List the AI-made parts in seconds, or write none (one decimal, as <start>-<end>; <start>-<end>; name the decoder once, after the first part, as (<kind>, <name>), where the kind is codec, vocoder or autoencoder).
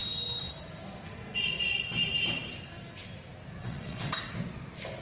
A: 0.0-0.5 (vocoder, WaveNeXt); 3.6-4.3